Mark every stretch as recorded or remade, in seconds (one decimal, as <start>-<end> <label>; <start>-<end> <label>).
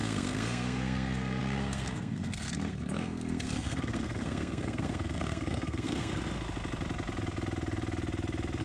0.0-6.1 remade; 6.1-8.6 recorded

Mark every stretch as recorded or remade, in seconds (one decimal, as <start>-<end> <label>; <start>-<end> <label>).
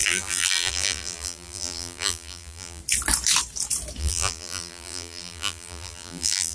0.0-2.8 remade; 2.8-4.0 recorded; 4.0-6.5 remade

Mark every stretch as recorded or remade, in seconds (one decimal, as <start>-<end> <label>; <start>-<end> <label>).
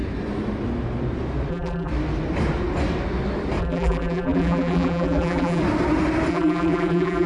0.0-1.5 recorded; 1.5-1.9 remade; 1.9-3.6 recorded; 3.6-5.6 remade; 5.6-6.3 recorded; 6.3-7.3 remade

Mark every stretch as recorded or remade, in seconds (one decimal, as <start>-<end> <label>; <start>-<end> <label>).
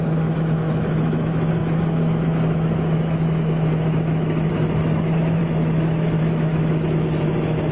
0.0-7.7 remade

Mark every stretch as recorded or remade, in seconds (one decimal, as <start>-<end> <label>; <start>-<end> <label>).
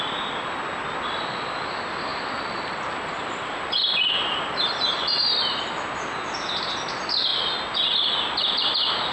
0.0-2.1 recorded; 2.1-5.7 remade; 5.7-9.1 recorded